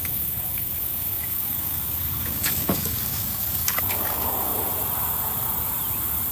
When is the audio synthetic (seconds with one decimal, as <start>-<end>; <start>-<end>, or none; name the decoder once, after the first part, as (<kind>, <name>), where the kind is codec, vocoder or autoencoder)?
0.0-4.5 (codec, DAC)